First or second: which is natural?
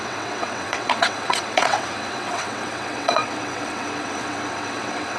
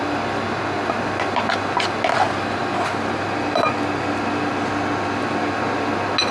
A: second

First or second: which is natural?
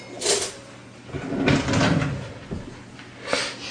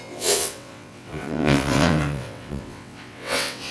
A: first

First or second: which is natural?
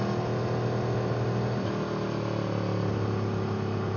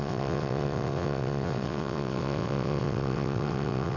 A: first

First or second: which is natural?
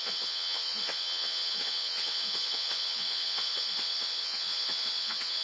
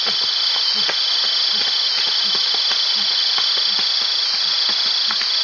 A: second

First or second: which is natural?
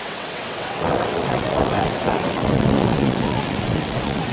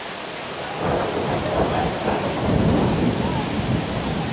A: second